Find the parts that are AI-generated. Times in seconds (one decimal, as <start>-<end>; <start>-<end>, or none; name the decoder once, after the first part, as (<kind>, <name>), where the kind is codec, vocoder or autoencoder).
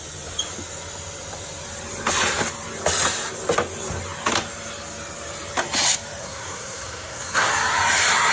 6.2-7.5 (codec, SNAC)